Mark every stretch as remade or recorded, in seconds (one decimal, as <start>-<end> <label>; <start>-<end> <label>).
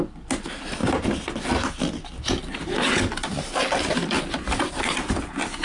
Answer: 0.0-5.6 recorded